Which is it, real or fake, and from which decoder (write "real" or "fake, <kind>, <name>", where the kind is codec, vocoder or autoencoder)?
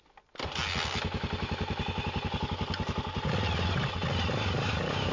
real